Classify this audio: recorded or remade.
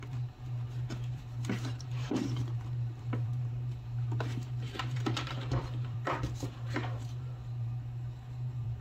remade